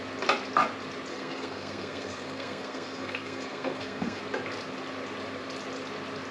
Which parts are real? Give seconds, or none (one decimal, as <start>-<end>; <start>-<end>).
0.0-1.1; 4.2-6.3